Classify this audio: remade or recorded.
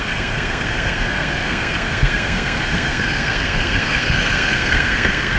remade